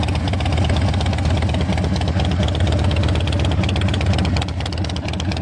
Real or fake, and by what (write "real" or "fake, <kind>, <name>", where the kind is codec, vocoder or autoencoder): real